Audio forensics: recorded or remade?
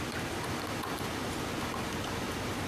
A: recorded